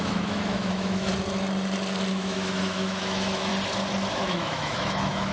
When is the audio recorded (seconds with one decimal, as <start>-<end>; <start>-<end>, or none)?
1.1-2.1; 3.5-4.1